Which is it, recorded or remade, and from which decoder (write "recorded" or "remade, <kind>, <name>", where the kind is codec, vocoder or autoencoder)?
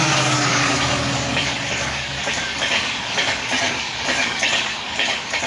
remade, codec, DAC